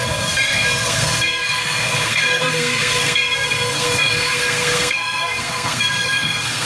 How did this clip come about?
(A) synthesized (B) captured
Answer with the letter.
A